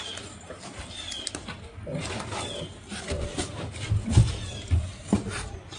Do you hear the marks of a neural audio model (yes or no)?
no